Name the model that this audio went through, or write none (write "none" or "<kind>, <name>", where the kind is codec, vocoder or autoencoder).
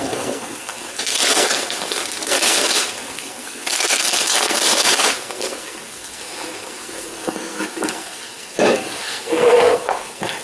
codec, SNAC